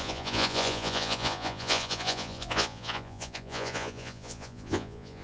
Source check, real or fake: fake